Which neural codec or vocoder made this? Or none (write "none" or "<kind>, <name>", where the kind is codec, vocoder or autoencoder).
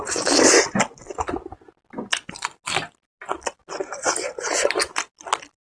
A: none